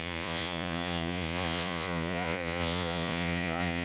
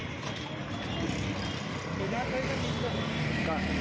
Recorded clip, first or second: second